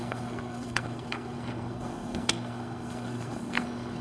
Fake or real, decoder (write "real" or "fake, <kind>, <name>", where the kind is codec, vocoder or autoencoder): fake, codec, SNAC